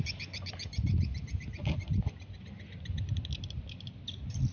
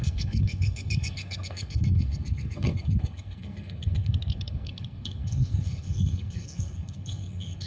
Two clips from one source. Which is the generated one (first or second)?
second